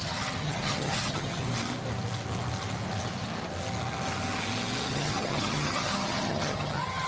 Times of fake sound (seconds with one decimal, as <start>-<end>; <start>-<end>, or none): 0.0-1.4; 4.9-7.1